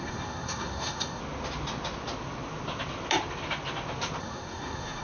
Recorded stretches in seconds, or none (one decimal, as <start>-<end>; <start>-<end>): 1.2-4.2